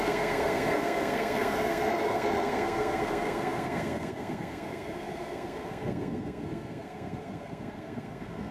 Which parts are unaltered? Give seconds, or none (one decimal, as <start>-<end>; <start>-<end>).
none

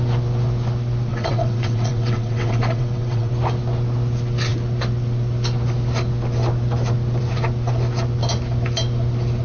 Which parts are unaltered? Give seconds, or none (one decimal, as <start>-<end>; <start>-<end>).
0.0-1.1; 3.3-9.4

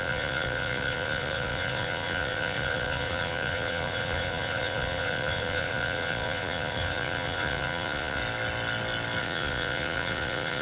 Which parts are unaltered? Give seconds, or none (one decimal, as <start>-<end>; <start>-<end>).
8.2-9.2